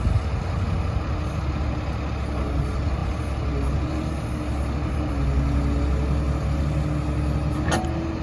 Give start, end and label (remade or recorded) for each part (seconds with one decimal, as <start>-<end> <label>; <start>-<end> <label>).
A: 0.0-8.2 recorded